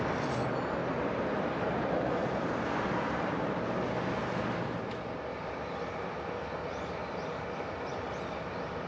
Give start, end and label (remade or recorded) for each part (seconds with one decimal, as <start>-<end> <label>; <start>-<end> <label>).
0.0-0.8 recorded; 0.8-3.5 remade; 3.5-8.9 recorded